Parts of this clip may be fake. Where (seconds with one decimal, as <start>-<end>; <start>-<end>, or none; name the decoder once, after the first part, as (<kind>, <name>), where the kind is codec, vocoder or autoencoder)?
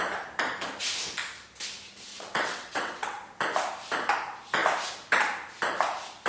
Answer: 2.1-3.4 (vocoder, WaveNeXt)